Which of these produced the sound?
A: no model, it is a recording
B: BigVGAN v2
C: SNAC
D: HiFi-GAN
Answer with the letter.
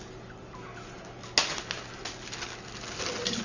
A